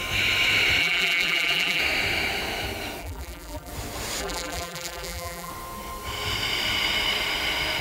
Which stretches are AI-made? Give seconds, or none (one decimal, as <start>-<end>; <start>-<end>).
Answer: 0.8-1.8; 3.0-3.7; 4.2-5.5